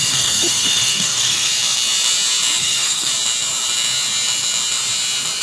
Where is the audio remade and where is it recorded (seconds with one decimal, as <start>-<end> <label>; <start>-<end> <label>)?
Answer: 0.0-1.5 remade; 1.5-2.6 recorded; 2.6-3.1 remade; 3.1-5.4 recorded